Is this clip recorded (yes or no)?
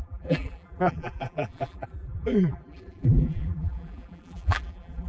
no